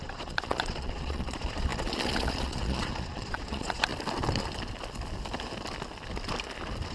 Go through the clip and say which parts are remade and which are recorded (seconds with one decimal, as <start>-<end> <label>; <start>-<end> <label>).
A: 0.0-3.9 remade; 3.9-6.9 recorded